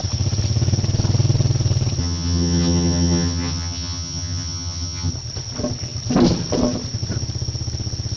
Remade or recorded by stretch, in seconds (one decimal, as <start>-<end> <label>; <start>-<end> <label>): 0.0-2.0 recorded; 2.0-5.1 remade; 5.1-8.2 recorded